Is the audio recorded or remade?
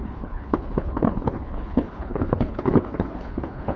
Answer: remade